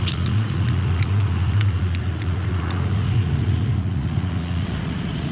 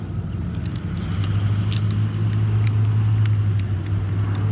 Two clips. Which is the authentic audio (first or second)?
second